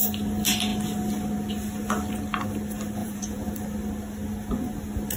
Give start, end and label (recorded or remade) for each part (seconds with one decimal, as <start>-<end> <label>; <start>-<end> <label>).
0.0-3.0 recorded; 3.0-3.5 remade; 3.5-5.2 recorded